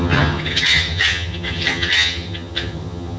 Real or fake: fake